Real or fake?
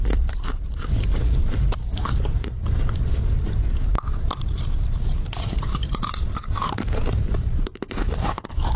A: fake